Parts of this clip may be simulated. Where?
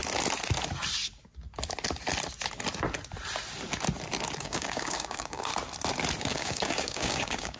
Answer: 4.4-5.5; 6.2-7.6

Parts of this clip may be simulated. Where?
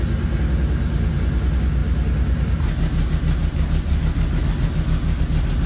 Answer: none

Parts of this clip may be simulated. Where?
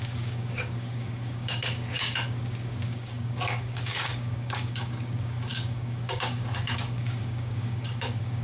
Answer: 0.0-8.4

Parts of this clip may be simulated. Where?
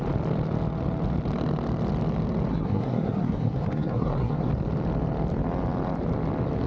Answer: 2.5-4.5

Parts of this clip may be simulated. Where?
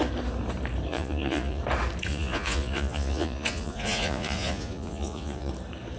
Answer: 0.9-1.6; 2.1-5.5